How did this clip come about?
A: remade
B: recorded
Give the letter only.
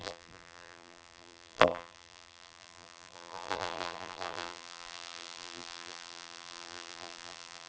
A